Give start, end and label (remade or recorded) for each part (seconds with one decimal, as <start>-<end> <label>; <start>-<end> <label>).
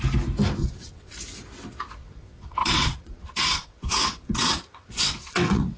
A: 0.0-0.6 recorded; 0.6-1.1 remade; 1.1-2.0 recorded; 2.0-5.8 remade